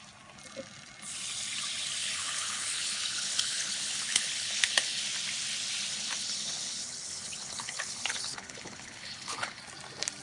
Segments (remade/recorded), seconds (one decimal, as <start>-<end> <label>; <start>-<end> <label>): 0.0-2.0 recorded; 2.0-5.0 remade; 5.0-5.9 recorded; 5.9-9.6 remade; 9.6-10.2 recorded